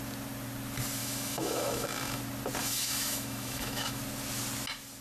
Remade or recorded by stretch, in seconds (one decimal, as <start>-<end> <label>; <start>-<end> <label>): 0.0-1.0 recorded; 1.0-2.2 remade; 2.2-2.6 recorded; 2.6-4.0 remade; 4.0-5.0 recorded